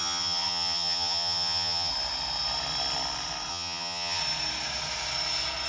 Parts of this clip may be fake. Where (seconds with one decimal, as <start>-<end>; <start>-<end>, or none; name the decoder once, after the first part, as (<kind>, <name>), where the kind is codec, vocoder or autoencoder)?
0.0-1.9 (vocoder, HiFi-GAN); 3.5-4.2